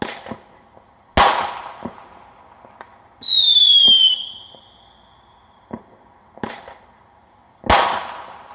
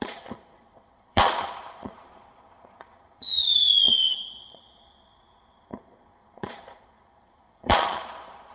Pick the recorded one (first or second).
first